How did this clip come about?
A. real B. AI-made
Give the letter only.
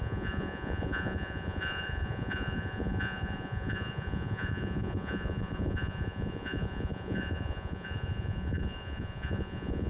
B